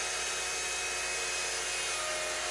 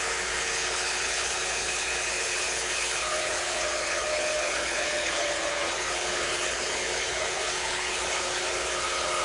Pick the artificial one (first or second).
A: second